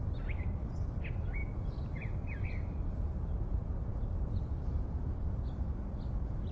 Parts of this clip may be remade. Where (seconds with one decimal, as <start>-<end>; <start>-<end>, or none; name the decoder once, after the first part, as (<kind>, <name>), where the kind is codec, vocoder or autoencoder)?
1.4-4.5 (vocoder, BigVGAN v2)